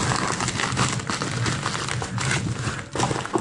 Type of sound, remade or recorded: recorded